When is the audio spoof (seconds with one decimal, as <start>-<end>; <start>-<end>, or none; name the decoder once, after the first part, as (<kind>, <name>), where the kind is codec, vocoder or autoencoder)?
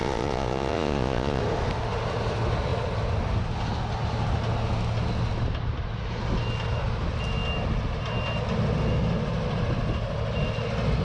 0.0-1.4 (vocoder, Vocos)